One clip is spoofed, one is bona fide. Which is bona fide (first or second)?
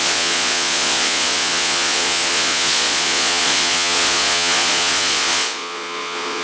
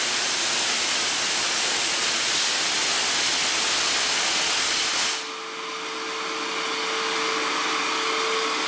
second